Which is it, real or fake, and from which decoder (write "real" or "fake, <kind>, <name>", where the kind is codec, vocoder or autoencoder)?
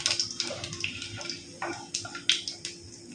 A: real